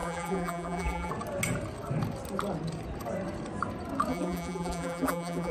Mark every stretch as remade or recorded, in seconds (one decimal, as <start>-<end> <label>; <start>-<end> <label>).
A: 0.0-1.1 remade; 1.1-4.1 recorded; 4.1-5.5 remade